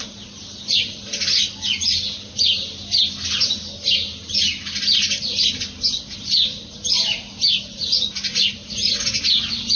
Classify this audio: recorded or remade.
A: recorded